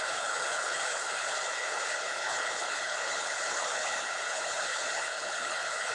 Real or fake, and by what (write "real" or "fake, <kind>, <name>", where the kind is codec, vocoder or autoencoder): fake, codec, HILCodec